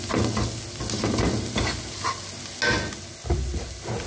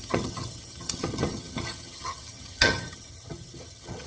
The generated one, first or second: second